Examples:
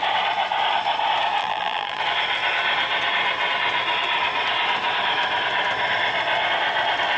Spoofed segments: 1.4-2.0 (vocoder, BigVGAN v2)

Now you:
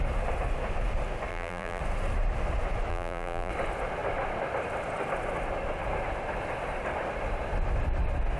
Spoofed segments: 1.3-1.8 (vocoder, BigVGAN v2); 2.9-3.5

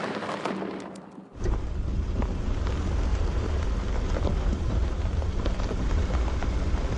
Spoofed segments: 1.3-2.7 (vocoder, BigVGAN v2); 3.1-5.9

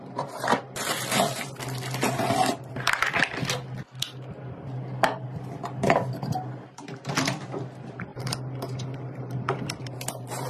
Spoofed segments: 0.0-3.6 (vocoder, BigVGAN v2); 7.3-8.1; 9.2-10.5

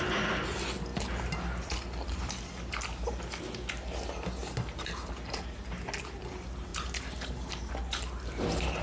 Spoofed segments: 4.4-5.6 (vocoder, BigVGAN v2); 6.7-7.7

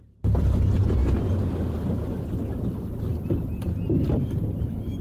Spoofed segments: 0.0-1.0 (vocoder, BigVGAN v2); 1.9-5.0